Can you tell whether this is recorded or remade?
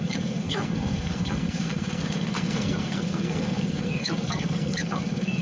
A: remade